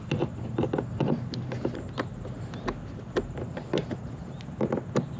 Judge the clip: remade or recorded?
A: recorded